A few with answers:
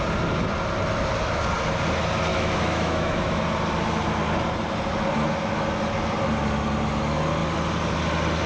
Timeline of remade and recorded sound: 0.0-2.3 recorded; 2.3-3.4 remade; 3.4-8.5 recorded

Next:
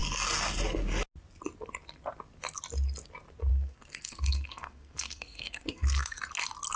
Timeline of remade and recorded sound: 0.0-3.5 recorded; 3.5-6.2 remade; 6.2-6.8 recorded

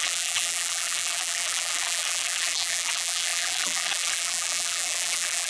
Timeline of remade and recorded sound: 0.0-5.5 remade

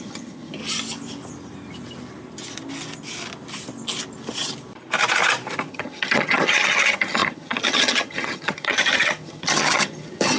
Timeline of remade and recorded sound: 0.0-0.6 remade; 0.6-5.7 recorded; 5.7-10.4 remade

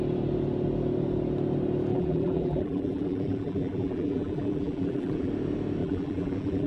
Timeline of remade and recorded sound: 0.0-1.9 recorded; 1.9-5.3 remade; 5.3-5.8 recorded; 5.8-6.7 remade

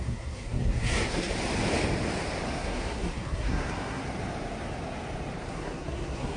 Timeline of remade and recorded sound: 0.0-1.3 remade; 1.3-2.5 recorded; 2.5-4.0 remade; 4.0-5.5 recorded; 5.5-6.4 remade

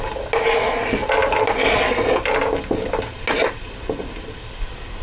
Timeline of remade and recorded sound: 0.0-5.0 recorded